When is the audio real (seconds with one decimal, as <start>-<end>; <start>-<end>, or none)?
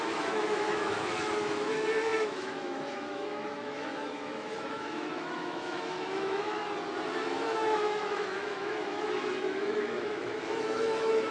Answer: 6.6-7.1